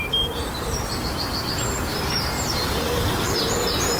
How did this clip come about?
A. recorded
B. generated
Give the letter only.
B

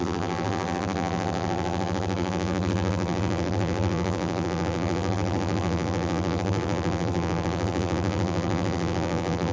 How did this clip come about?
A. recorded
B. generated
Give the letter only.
B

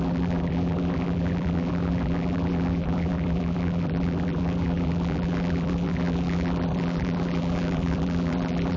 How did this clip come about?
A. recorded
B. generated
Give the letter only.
B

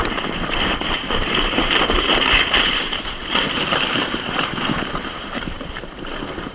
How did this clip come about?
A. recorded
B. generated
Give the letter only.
B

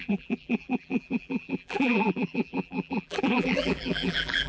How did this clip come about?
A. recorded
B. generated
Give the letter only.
B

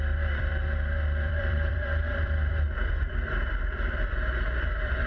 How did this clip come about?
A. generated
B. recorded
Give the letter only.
A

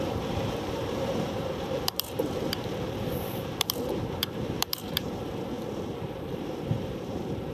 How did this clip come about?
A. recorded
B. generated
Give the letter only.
B